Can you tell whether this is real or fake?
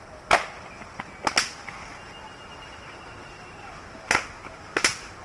real